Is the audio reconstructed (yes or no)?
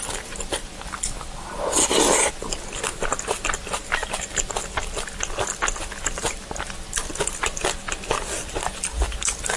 no